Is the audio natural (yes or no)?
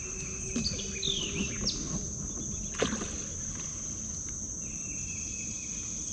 yes